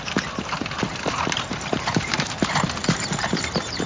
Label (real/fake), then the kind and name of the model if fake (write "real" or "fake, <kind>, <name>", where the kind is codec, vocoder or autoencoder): fake, vocoder, BigVGAN v2